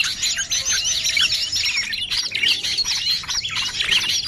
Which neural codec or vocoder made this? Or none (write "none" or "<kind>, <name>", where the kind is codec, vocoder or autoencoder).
none